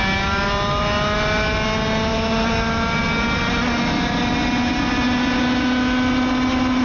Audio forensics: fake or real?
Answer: real